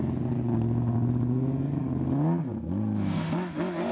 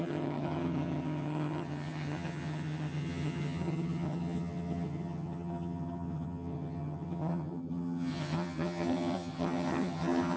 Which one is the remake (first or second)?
second